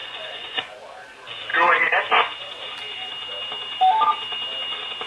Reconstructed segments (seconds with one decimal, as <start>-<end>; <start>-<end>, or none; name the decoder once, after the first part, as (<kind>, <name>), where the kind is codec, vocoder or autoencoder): 0.0-0.8 (vocoder, Vocos)